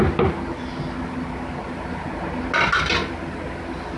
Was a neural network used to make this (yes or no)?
no